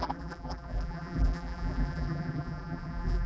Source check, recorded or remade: remade